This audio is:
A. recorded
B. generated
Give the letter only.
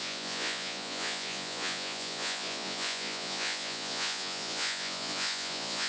B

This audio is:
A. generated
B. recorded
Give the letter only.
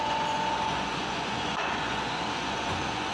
A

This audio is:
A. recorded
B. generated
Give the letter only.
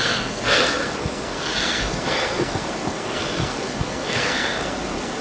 B